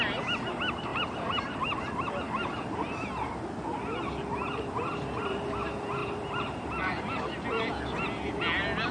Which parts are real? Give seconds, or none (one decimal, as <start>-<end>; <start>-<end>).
0.0-0.9; 3.3-6.0; 7.0-8.9